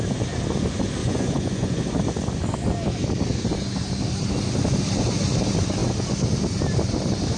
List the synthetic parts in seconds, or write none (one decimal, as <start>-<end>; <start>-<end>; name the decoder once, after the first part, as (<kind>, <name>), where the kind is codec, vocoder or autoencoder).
1.0-1.8 (vocoder, Vocos)